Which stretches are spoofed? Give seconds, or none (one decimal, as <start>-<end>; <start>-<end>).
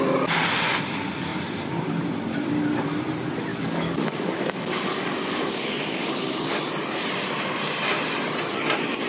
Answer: 3.5-6.5